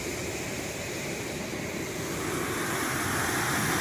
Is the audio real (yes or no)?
yes